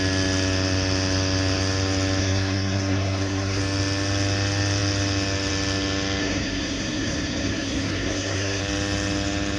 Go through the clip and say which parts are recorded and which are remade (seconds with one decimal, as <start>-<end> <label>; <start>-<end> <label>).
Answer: 0.0-2.2 recorded; 2.2-3.6 remade; 3.6-6.2 recorded; 6.2-8.6 remade; 8.6-9.6 recorded